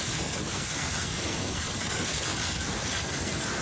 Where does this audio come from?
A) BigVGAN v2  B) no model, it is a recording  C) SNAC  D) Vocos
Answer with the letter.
C